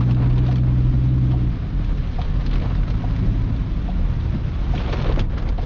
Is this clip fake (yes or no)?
no